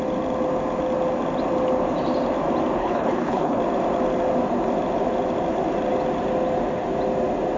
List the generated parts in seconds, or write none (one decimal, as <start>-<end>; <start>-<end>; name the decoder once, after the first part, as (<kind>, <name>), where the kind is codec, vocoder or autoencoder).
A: 2.8-3.6 (codec, HILCodec)